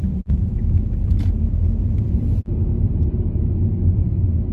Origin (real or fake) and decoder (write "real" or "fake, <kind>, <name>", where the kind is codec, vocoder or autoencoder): real